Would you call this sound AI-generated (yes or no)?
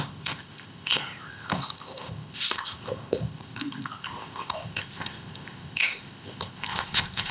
yes